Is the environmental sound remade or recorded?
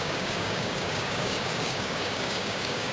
remade